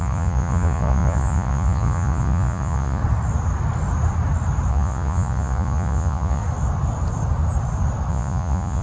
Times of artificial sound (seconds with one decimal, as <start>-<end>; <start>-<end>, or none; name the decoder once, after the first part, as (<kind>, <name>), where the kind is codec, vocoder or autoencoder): 0.0-3.0 (vocoder, Vocos); 4.7-6.4; 8.1-8.8